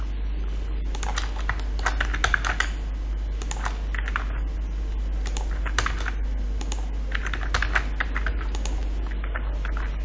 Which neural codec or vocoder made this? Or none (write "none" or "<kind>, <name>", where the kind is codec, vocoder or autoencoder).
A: none